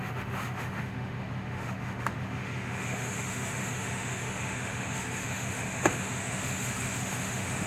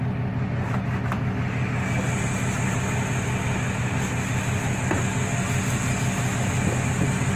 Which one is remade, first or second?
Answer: first